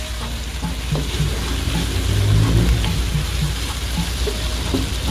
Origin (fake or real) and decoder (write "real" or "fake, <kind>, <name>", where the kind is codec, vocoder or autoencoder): real